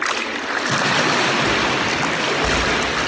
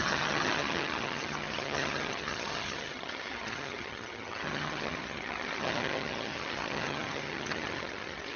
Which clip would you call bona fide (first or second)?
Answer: first